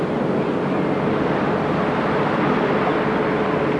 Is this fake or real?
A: real